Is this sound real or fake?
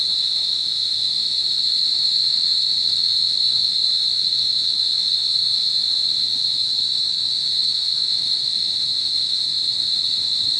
fake